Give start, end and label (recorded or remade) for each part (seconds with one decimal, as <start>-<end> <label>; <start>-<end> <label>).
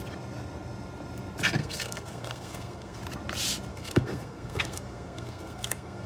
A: 0.0-1.6 recorded; 1.6-3.0 remade; 3.0-3.7 recorded; 3.7-6.1 remade